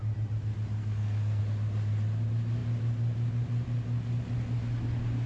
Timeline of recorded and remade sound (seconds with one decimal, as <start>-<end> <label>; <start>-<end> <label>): 0.0-0.8 recorded; 0.8-1.4 remade; 1.4-5.3 recorded